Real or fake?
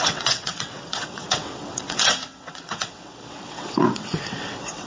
fake